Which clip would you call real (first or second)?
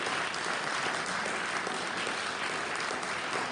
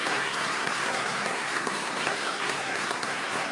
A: first